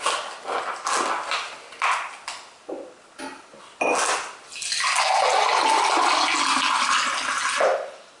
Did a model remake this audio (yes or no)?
no